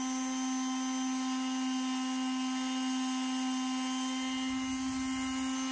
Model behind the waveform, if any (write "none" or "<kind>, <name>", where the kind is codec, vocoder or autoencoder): none